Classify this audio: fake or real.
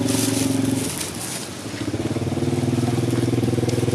real